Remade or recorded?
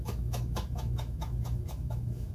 remade